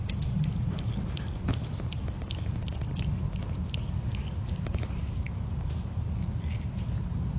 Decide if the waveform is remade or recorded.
recorded